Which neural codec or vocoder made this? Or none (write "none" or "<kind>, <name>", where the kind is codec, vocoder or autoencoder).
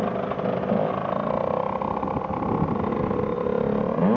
none